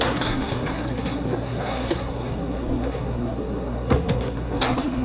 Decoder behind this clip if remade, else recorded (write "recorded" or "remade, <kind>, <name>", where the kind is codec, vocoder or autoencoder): remade, codec, SNAC